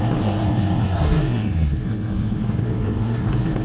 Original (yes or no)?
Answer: no